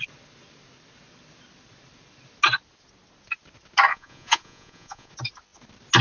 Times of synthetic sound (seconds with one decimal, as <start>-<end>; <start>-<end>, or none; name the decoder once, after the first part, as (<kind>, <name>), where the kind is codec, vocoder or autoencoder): 3.9-5.1 (vocoder, Vocos)